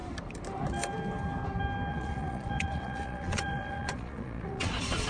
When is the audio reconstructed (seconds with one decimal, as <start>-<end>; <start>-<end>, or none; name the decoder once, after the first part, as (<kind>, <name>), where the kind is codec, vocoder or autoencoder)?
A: 1.9-5.1 (vocoder, Vocos)